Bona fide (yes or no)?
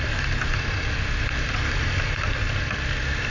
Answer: yes